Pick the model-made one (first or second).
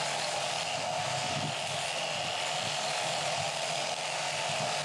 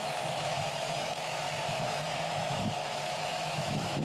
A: second